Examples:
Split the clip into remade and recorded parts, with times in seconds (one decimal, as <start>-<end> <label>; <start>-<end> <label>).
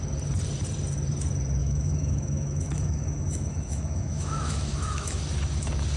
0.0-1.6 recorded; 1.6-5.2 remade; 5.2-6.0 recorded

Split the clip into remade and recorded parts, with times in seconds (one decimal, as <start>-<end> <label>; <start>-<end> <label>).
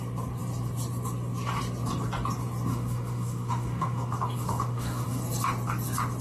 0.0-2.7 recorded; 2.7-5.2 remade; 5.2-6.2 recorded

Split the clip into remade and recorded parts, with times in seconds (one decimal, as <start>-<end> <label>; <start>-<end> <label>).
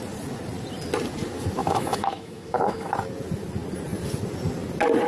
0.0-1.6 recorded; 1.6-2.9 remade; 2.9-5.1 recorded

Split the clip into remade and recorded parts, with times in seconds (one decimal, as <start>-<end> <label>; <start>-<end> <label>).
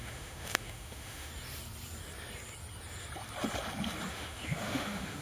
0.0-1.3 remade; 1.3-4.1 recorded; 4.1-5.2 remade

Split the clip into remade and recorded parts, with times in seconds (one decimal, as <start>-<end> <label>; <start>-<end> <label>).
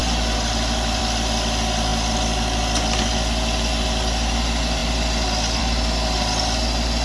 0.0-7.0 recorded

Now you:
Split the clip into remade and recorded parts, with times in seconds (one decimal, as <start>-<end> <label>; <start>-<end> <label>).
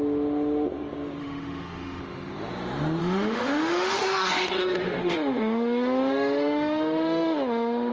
0.0-1.2 recorded; 1.2-2.0 remade; 2.0-3.0 recorded; 3.0-7.9 remade